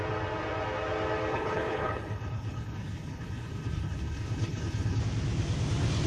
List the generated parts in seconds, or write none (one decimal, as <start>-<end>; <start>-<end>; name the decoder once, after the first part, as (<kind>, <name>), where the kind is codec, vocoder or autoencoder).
1.3-5.0 (codec, HILCodec)